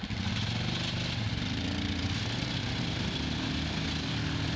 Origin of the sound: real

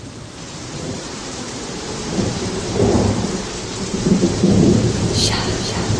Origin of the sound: fake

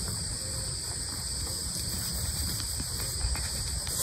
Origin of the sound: fake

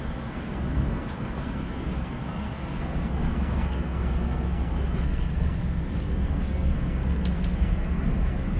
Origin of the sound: fake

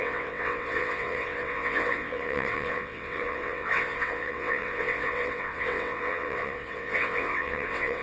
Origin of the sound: fake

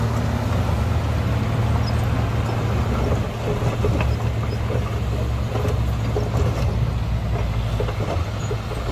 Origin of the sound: real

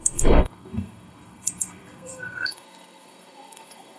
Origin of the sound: fake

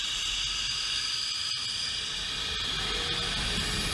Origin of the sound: real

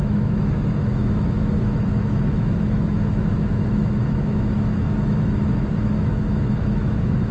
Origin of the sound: fake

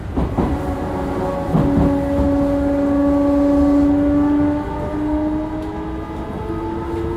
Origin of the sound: real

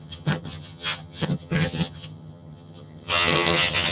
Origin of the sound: fake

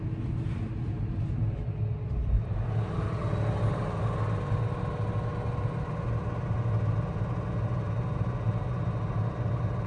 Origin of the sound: real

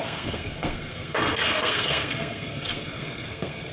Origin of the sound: fake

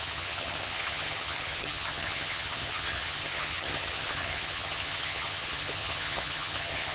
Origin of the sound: fake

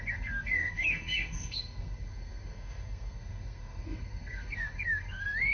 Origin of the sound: fake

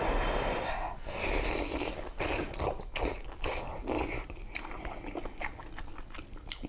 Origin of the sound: real